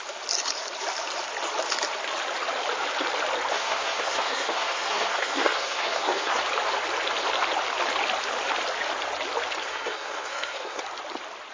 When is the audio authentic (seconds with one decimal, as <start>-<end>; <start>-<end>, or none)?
0.0-3.5; 6.4-9.6; 10.8-11.5